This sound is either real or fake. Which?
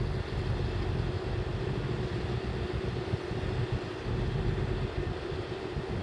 real